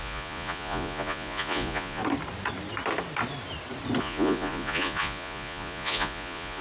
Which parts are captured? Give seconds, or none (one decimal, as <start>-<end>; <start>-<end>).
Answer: 2.0-4.0